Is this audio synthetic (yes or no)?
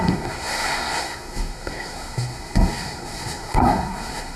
yes